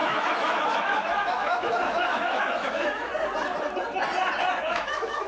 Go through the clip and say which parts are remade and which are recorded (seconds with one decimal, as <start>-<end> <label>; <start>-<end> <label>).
0.0-3.1 remade; 3.1-4.6 recorded; 4.6-5.3 remade